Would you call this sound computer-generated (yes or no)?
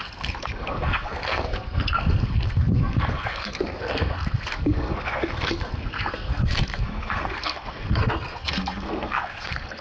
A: yes